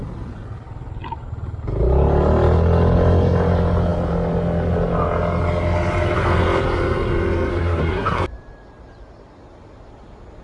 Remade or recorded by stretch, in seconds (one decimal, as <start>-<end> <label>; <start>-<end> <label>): 0.0-7.5 recorded; 7.5-8.2 remade; 8.2-10.4 recorded